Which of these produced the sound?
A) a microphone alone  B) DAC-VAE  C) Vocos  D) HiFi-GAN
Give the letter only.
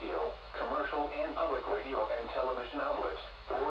B